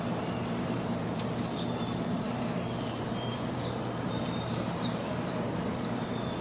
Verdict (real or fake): fake